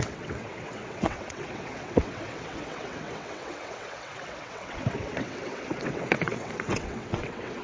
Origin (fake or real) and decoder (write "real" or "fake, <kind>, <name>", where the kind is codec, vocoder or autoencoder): fake, vocoder, WaveNeXt